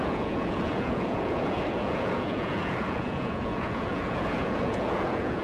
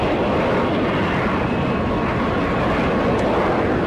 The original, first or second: second